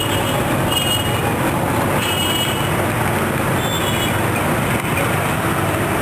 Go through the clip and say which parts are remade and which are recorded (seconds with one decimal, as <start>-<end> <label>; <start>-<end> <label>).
0.0-1.2 recorded; 1.2-2.1 remade; 2.1-6.0 recorded